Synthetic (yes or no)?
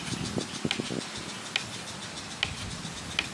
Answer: no